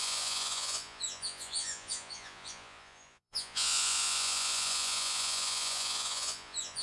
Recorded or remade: remade